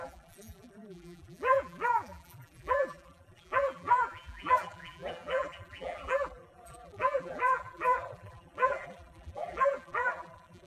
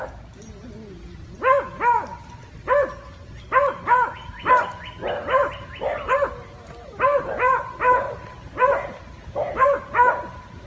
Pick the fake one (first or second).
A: first